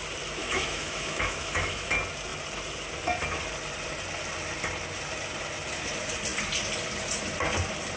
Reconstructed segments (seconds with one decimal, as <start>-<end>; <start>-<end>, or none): 0.4-1.9